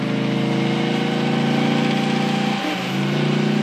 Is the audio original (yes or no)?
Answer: yes